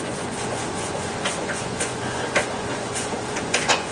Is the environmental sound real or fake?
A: fake